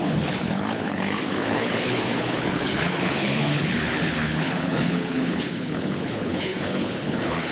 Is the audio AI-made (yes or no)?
yes